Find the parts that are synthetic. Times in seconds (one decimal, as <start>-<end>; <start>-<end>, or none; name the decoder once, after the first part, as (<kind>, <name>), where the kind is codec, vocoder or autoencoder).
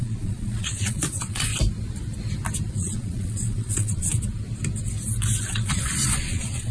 0.0-1.5 (vocoder, Vocos); 2.7-4.1; 5.4-6.7